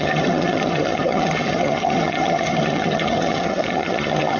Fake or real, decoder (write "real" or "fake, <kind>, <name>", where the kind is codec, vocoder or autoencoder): fake, vocoder, HiFi-GAN